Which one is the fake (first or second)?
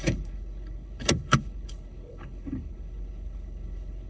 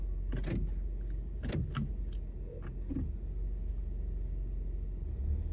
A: first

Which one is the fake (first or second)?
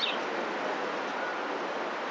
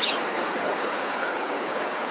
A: second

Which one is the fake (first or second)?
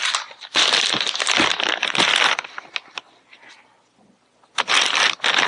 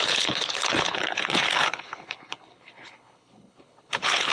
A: second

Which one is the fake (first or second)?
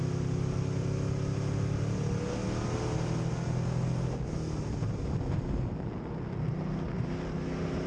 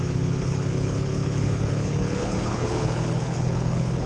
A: second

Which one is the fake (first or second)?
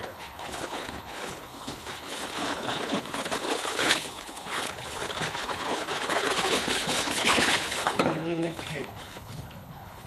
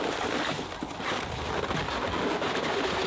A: first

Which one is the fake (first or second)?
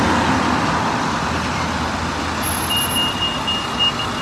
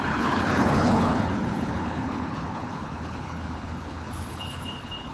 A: second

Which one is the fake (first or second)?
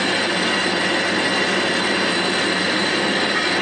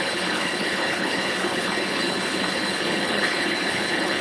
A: second